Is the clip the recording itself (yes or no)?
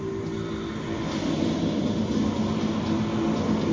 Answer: yes